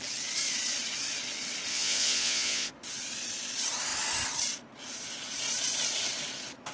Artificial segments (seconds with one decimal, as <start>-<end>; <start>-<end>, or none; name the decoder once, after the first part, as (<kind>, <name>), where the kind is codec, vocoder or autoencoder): 1.7-2.7 (vocoder, Vocos)